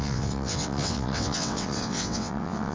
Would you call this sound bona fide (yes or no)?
no